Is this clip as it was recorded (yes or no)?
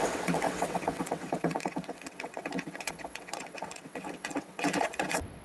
no